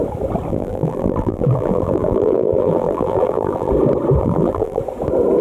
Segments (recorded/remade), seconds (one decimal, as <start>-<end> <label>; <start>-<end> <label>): 0.0-0.5 recorded; 0.5-3.7 remade; 3.7-4.2 recorded; 4.2-4.8 remade; 4.8-5.4 recorded